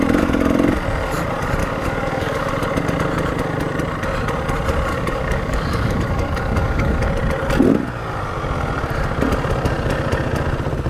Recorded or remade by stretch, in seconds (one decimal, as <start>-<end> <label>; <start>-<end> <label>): 0.0-1.6 recorded; 1.6-2.5 remade; 2.5-4.9 recorded; 4.9-7.1 remade; 7.1-10.9 recorded

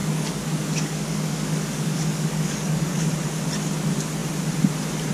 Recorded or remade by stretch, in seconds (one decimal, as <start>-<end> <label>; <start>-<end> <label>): 0.0-3.1 remade; 3.1-5.1 recorded

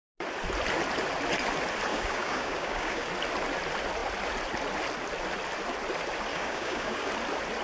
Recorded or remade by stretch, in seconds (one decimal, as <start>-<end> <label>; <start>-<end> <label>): 0.0-1.9 recorded; 1.9-3.1 remade; 3.1-6.3 recorded; 6.3-7.1 remade; 7.1-7.6 recorded

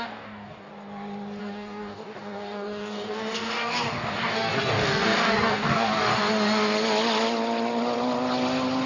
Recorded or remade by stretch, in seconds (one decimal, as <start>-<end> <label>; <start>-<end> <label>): 0.0-0.7 remade; 0.7-1.4 recorded; 1.4-6.1 remade; 6.1-8.9 recorded

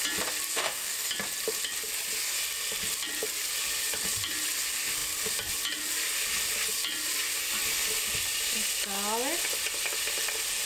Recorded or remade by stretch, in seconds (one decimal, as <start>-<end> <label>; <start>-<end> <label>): 0.0-0.5 recorded; 0.5-1.1 remade; 1.1-10.7 recorded

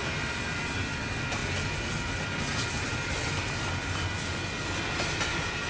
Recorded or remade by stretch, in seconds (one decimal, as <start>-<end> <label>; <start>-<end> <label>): 0.0-5.7 recorded

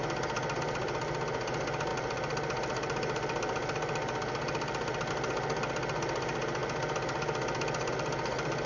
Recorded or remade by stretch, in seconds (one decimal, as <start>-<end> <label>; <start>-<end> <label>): 0.0-8.7 recorded